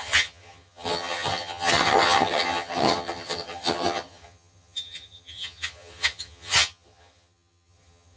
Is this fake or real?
fake